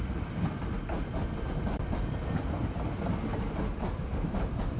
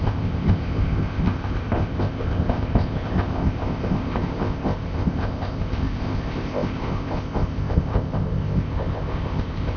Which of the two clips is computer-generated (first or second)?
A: second